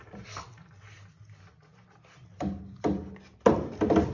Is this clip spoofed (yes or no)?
no